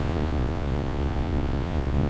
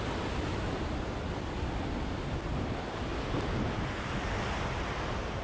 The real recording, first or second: second